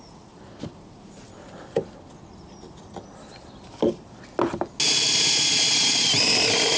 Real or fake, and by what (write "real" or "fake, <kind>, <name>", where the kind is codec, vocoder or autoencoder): real